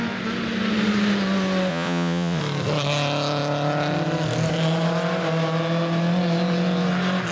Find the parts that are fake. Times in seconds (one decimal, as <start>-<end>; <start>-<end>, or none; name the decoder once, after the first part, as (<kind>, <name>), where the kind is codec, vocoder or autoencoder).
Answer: 1.7-2.4 (vocoder, Vocos)